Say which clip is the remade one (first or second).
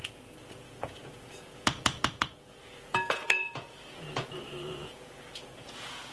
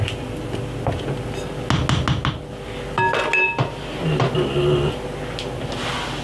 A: first